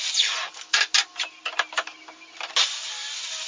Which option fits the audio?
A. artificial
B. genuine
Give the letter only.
B